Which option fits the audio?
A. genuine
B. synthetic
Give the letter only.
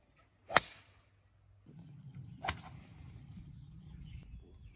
A